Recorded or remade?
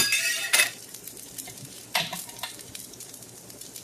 remade